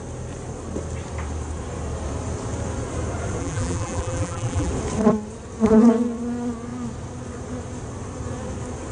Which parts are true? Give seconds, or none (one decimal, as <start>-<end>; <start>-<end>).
0.0-3.4; 4.7-8.9